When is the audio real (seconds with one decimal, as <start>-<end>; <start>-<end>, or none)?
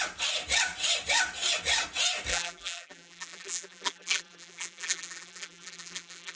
0.0-2.3